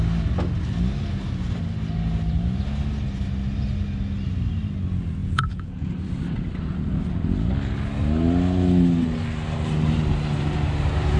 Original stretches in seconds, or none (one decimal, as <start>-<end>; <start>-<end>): 0.0-5.2; 5.9-11.2